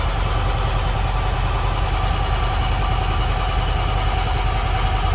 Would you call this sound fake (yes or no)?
no